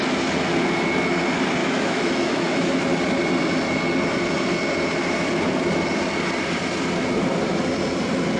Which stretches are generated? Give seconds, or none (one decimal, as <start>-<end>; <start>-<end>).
1.6-2.8